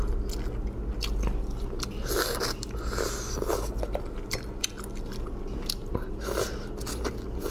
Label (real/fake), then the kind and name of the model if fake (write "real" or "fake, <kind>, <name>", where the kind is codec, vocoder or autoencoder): real